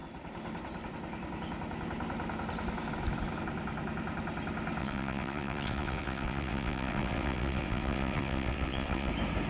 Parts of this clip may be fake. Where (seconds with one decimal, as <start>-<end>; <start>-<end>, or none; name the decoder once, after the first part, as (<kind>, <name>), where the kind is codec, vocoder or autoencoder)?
4.8-9.1 (vocoder, WaveNeXt)